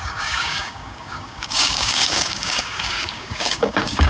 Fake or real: fake